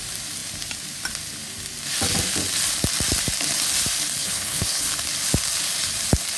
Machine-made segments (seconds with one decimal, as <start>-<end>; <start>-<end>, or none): 4.2-4.8